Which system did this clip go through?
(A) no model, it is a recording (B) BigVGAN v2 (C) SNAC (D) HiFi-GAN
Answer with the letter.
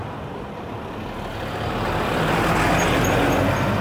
A